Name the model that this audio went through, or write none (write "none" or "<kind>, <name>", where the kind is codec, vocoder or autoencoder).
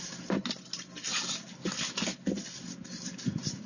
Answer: none